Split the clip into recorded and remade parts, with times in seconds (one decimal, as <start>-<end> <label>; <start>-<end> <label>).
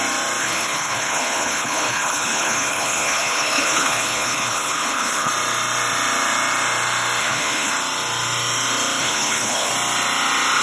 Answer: 0.0-0.4 recorded; 0.4-5.3 remade; 5.3-7.2 recorded; 7.2-7.7 remade; 7.7-9.0 recorded; 9.0-9.7 remade; 9.7-10.6 recorded